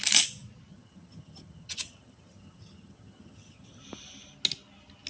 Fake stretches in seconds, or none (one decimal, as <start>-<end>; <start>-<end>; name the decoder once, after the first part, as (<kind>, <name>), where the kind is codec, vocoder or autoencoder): 0.7-3.8 (vocoder, HiFi-GAN)